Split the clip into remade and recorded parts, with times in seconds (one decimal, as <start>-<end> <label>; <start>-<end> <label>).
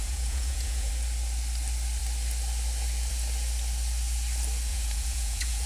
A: 0.0-0.9 remade; 0.9-4.7 recorded; 4.7-5.7 remade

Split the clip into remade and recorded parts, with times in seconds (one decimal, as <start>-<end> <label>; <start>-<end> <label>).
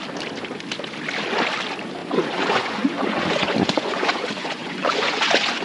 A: 0.0-2.0 recorded; 2.0-5.6 remade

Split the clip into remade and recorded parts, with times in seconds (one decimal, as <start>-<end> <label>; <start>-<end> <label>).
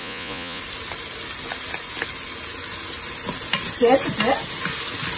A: 0.0-0.6 remade; 0.6-5.2 recorded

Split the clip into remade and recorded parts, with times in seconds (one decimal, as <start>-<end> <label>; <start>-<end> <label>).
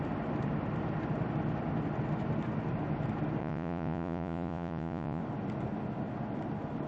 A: 0.0-3.4 recorded; 3.4-5.2 remade; 5.2-6.9 recorded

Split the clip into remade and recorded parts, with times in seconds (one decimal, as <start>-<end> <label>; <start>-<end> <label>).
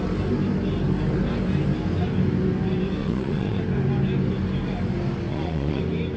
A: 0.0-3.0 recorded; 3.0-3.6 remade; 3.6-5.3 recorded; 5.3-5.8 remade; 5.8-6.2 recorded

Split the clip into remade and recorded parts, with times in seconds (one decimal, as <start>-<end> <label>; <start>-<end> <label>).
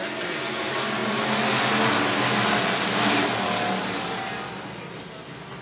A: 0.0-5.6 recorded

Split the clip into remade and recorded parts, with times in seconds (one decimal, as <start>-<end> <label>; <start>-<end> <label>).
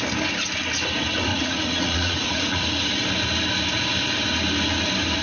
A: 0.0-1.3 recorded; 1.3-2.6 remade; 2.6-5.2 recorded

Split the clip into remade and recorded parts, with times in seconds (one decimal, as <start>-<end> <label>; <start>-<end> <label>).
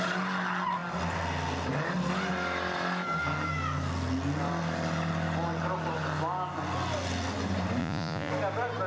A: 0.0-7.8 recorded; 7.8-8.3 remade; 8.3-8.9 recorded